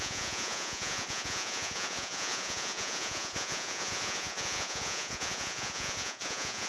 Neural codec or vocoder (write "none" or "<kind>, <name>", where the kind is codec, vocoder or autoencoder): vocoder, Vocos